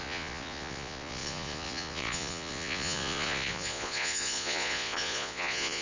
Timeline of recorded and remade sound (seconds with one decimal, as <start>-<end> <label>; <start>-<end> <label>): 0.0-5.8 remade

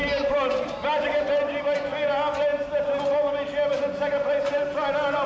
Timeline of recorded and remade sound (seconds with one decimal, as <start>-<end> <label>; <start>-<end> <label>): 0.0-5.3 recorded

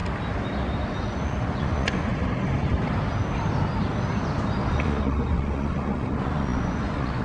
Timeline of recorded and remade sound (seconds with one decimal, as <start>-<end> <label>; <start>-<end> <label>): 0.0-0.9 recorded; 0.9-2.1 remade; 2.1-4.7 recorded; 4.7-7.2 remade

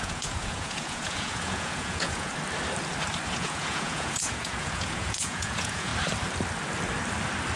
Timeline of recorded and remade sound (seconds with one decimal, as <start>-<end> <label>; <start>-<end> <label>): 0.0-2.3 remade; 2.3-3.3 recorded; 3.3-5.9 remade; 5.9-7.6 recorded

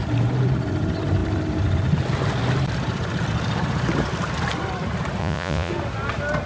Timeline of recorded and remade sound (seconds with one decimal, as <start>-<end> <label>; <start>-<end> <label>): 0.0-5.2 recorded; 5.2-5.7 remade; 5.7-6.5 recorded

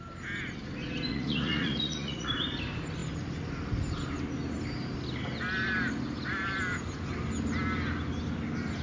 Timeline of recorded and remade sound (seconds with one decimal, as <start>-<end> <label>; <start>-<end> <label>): 0.0-1.1 recorded; 1.1-2.3 remade; 2.3-8.8 recorded

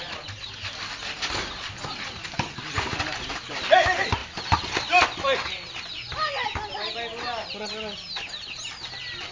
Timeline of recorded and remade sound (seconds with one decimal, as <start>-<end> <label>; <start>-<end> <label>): 0.0-9.3 recorded